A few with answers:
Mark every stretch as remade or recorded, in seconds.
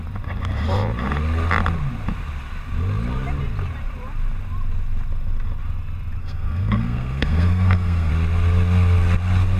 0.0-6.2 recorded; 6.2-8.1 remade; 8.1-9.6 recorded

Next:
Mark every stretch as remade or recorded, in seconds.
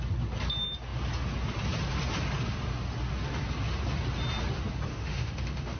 0.0-4.9 recorded; 4.9-5.8 remade